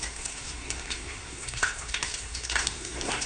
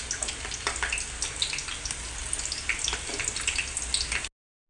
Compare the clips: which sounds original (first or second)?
second